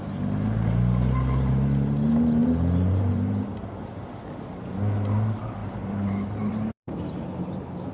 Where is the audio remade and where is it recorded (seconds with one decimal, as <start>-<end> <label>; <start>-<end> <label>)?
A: 0.0-2.4 recorded; 2.4-3.5 remade; 3.5-5.6 recorded; 5.6-7.9 remade